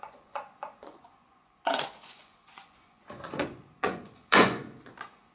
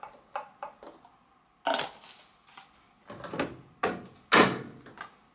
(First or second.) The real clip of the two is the second